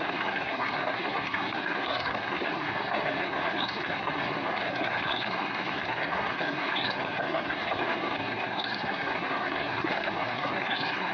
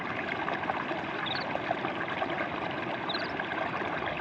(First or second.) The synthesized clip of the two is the first